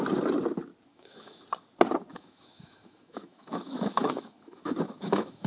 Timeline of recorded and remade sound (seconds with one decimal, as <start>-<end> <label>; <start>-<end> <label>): 0.0-0.9 recorded; 0.9-1.4 remade; 1.4-2.1 recorded; 2.1-5.5 remade